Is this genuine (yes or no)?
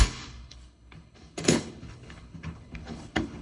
no